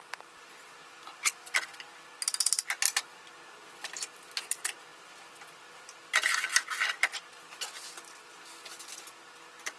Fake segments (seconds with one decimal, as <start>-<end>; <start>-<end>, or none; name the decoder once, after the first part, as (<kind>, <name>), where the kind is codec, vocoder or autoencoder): none